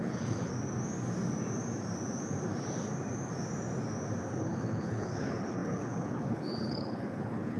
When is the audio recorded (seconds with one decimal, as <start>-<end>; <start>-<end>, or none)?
0.5-4.3